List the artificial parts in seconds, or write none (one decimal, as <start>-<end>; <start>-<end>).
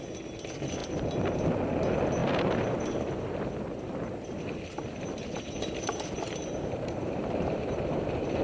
2.2-5.0; 7.0-8.4